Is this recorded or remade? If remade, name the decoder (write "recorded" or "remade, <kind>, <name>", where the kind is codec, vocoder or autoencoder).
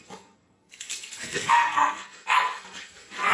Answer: remade, codec, SNAC